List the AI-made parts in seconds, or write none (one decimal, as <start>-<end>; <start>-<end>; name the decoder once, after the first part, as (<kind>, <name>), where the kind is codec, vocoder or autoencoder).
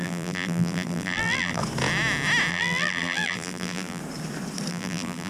0.0-1.6 (vocoder, BigVGAN v2); 2.5-4.0; 4.7-5.3